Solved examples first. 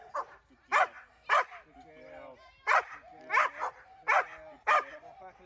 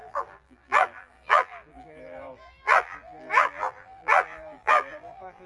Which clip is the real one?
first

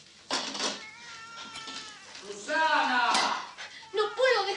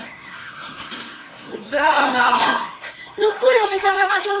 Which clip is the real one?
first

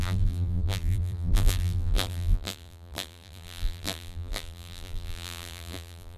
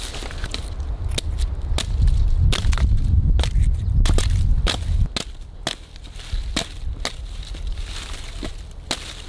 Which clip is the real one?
second